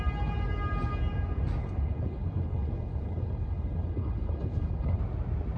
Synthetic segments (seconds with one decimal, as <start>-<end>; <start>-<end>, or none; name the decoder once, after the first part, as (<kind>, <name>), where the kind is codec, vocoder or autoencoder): 1.6-5.0 (codec, HILCodec)